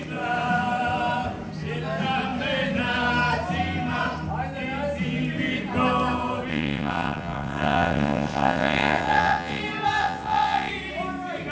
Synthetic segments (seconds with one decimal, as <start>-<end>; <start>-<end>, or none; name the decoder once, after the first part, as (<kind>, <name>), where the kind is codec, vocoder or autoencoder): 6.5-9.6 (vocoder, WaveNeXt); 10.0-10.7